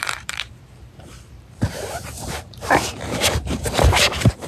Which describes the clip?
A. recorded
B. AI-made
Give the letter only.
B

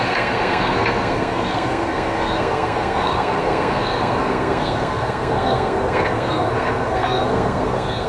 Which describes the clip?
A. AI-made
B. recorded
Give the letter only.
A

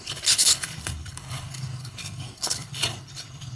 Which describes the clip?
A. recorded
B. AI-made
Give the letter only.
B